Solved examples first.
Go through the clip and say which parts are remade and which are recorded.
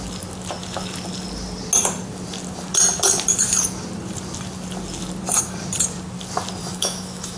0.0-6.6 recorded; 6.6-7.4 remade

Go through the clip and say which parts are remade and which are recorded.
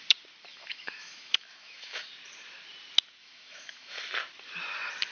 0.0-0.5 recorded; 0.5-2.1 remade; 2.1-3.2 recorded; 3.2-4.0 remade; 4.0-5.1 recorded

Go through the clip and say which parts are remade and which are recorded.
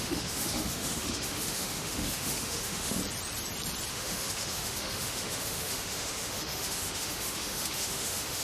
0.0-3.0 remade; 3.0-3.9 recorded; 3.9-8.4 remade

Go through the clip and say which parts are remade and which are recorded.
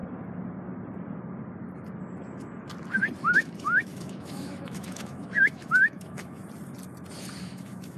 0.0-3.2 recorded; 3.2-6.4 remade; 6.4-7.4 recorded; 7.4-8.0 remade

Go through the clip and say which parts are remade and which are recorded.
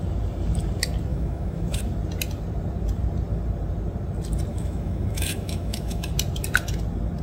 0.0-1.1 recorded; 1.1-1.8 remade; 1.8-4.5 recorded; 4.5-6.1 remade; 6.1-7.2 recorded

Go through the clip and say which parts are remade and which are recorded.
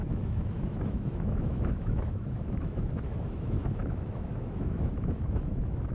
0.0-5.9 remade